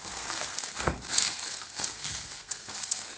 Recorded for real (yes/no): no